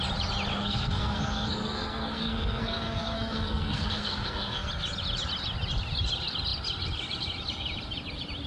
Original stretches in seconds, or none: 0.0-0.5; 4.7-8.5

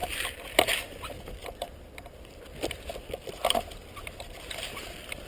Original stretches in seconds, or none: none

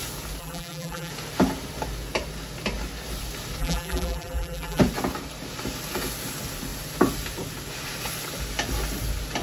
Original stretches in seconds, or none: 0.0-0.4; 1.1-3.6; 4.8-9.4

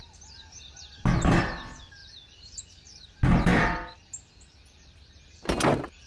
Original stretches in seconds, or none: 0.0-6.1